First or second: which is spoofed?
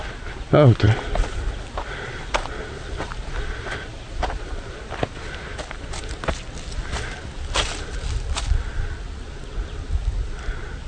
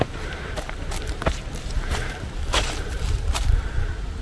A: second